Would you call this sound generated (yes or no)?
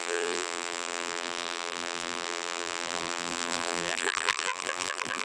yes